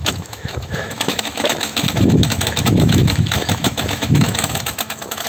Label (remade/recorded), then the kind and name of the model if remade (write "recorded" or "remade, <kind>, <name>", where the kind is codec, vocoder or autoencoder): remade, autoencoder, DAC-VAE